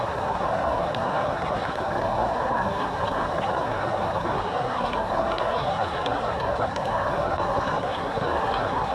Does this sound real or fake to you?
fake